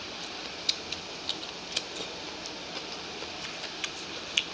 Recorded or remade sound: remade